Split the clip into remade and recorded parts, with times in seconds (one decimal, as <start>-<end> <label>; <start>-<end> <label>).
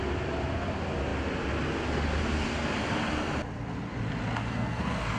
0.0-4.4 recorded; 4.4-5.2 remade